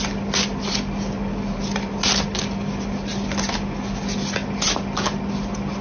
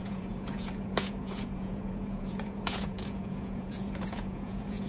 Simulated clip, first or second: second